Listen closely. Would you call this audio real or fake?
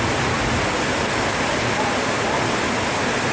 real